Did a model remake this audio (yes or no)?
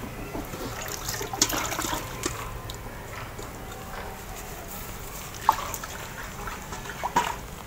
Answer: no